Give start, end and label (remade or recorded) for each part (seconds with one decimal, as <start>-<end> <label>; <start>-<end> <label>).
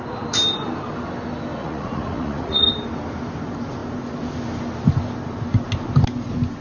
0.0-1.6 recorded; 1.6-2.7 remade; 2.7-6.6 recorded